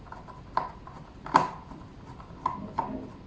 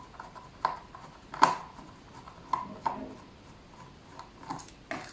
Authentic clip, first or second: second